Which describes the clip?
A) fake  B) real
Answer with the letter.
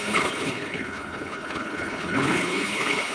A